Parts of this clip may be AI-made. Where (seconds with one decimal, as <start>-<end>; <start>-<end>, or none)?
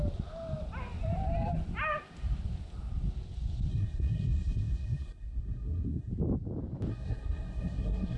3.7-6.1; 6.9-8.2